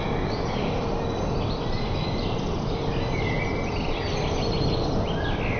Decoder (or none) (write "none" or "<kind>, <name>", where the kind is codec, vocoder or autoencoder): none